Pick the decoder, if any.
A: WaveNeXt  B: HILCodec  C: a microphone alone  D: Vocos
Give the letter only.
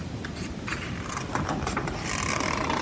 C